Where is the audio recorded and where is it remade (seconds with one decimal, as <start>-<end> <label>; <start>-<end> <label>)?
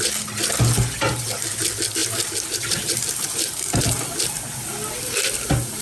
0.0-5.8 recorded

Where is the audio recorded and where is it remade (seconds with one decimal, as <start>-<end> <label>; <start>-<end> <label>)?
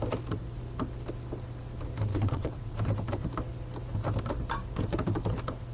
0.0-2.1 recorded; 2.1-2.8 remade; 2.8-5.7 recorded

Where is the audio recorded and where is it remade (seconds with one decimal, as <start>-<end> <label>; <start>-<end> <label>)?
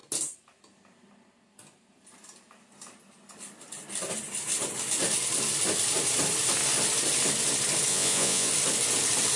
0.0-7.9 recorded; 7.9-8.5 remade; 8.5-9.4 recorded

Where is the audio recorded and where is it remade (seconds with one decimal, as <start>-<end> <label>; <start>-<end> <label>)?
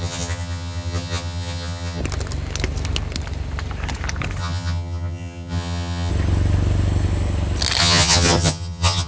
0.0-2.0 remade; 2.0-4.4 recorded; 4.4-6.1 remade; 6.1-7.8 recorded; 7.8-9.1 remade